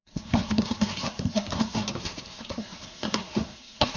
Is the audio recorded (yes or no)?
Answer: no